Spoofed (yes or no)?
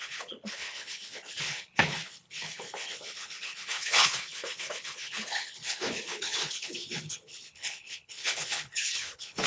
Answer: yes